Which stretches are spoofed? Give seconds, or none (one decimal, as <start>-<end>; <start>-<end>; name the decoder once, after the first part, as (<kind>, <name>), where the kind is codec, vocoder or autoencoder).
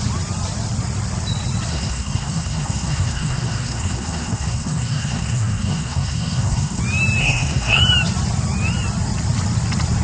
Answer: 1.7-6.8 (codec, SNAC); 7.2-7.8